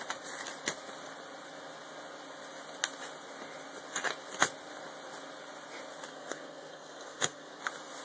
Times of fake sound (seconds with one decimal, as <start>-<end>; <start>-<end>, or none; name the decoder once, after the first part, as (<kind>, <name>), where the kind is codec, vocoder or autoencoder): 6.1-7.6 (codec, SNAC)